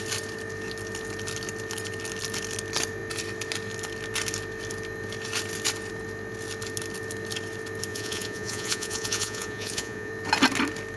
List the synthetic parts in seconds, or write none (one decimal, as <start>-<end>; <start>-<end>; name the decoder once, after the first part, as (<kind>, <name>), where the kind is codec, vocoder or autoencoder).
7.9-10.1 (vocoder, Vocos)